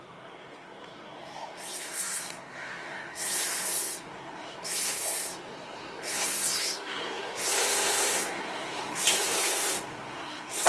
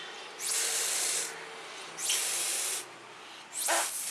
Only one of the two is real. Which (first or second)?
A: second